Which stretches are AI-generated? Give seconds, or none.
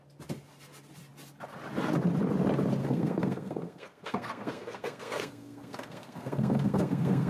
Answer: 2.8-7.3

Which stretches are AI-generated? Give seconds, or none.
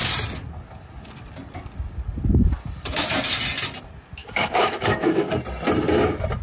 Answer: 4.2-5.3